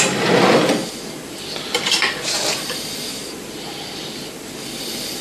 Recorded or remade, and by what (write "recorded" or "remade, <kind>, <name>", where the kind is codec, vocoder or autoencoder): remade, vocoder, BigVGAN v2